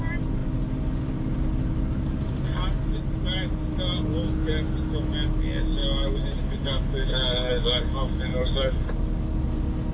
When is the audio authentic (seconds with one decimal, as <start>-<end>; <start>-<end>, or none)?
0.0-9.9